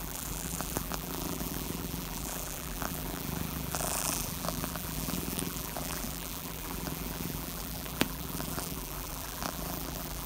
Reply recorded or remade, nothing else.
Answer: remade